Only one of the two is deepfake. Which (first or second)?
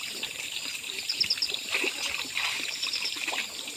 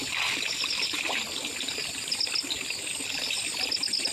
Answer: first